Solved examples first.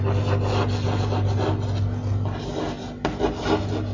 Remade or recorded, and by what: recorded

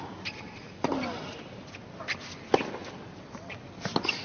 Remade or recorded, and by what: recorded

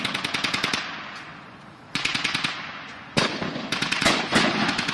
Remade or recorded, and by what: remade, vocoder, Vocos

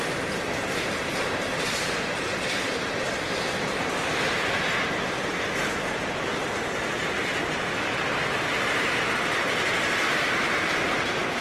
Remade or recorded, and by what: recorded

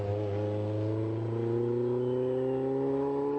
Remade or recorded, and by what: recorded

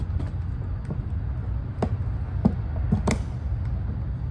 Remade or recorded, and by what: recorded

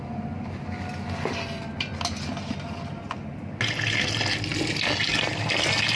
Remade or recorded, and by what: recorded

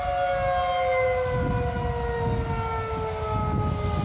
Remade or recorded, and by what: recorded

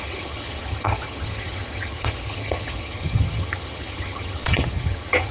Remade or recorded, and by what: remade, vocoder, HiFi-GAN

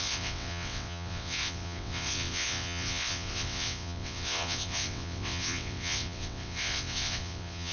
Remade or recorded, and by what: remade, vocoder, WaveNeXt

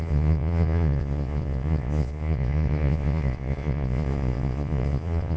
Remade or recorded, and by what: remade, vocoder, Vocos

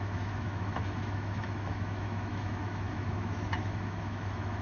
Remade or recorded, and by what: remade, autoencoder, DAC-VAE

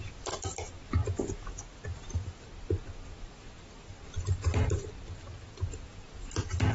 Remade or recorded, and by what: recorded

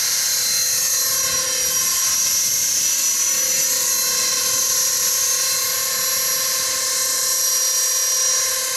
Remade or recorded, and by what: recorded